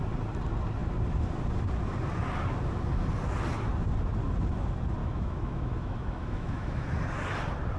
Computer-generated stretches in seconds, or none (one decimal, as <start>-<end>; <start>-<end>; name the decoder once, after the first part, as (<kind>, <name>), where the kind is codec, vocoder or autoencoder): 5.0-6.9 (autoencoder, DAC-VAE)